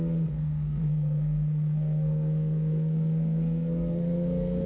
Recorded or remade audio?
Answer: remade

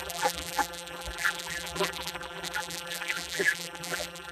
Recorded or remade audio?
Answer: remade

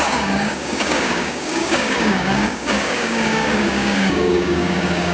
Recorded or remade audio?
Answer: remade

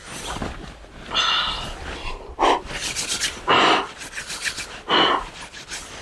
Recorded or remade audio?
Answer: recorded